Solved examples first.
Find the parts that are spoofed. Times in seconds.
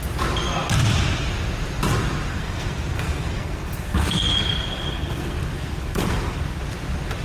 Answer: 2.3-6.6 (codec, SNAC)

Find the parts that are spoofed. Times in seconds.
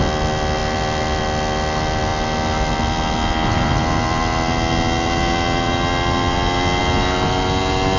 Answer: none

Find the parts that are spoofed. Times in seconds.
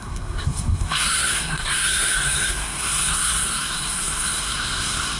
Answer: 0.0-5.2 (codec, SNAC)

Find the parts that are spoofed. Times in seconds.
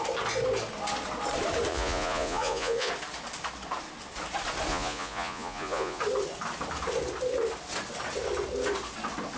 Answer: 1.7-2.9 (vocoder, Vocos); 4.7-6.0